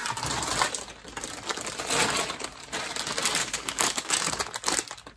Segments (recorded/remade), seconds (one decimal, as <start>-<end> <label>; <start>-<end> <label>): 0.0-3.4 recorded; 3.4-4.4 remade; 4.4-5.2 recorded